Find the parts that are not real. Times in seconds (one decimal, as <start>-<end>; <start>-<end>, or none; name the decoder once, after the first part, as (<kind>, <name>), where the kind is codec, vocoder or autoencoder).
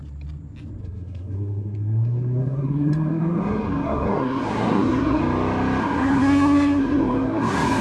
0.8-5.2 (codec, SNAC); 5.8-7.8